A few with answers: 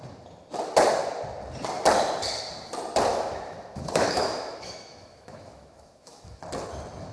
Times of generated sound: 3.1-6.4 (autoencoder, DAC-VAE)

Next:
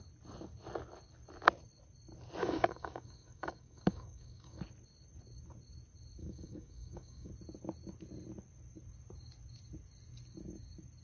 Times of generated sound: 2.4-4.6 (codec, DAC); 6.2-7.3

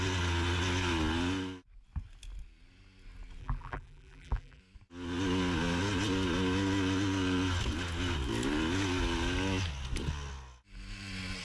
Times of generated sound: 3.4-4.6 (vocoder, BigVGAN v2)

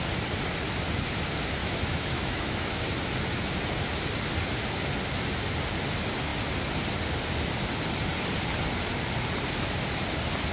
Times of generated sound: 1.6-2.8 (autoencoder, DAC-VAE)

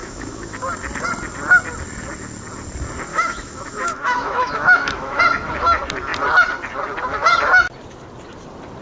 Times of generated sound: 0.0-0.6 (autoencoder, DAC-VAE); 3.1-5.2